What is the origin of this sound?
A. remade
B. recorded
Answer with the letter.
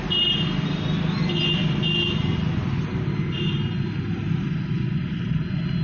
B